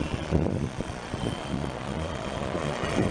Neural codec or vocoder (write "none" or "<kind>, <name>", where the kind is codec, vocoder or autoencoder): vocoder, Vocos